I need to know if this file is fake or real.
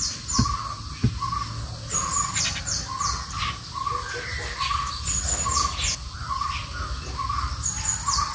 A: real